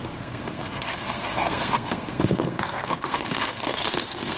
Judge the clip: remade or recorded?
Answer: remade